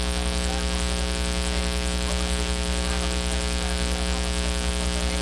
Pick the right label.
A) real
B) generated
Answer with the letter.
A